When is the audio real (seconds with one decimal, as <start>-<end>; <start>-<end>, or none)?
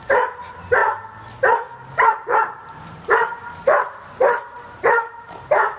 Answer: 0.8-1.9